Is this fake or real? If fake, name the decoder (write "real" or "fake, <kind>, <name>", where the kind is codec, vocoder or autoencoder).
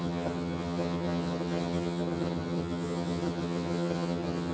fake, vocoder, HiFi-GAN